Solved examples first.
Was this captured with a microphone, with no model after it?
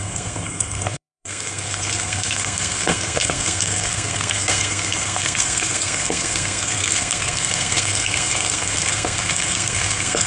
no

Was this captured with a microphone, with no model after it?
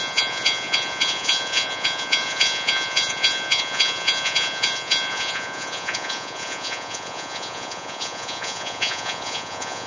no